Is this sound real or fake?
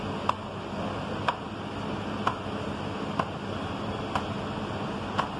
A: real